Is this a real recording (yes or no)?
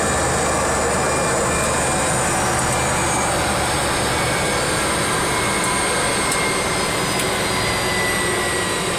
yes